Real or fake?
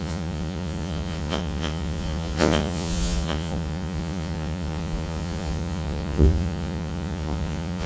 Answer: fake